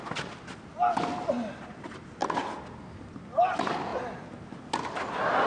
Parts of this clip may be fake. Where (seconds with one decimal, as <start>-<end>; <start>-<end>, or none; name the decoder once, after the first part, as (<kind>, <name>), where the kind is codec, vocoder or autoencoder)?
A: none